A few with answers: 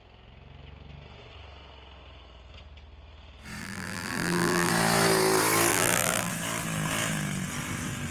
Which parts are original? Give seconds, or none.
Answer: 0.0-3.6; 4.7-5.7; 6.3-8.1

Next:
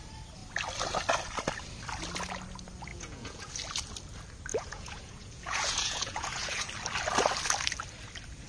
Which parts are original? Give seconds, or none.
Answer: 0.0-2.9; 3.5-4.5; 6.7-8.5

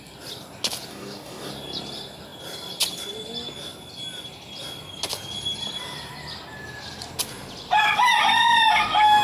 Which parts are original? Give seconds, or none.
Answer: 0.0-0.9; 1.5-9.2

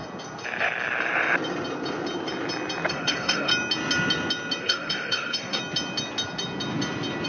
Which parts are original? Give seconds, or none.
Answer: 0.0-2.9; 3.5-4.6; 5.6-7.3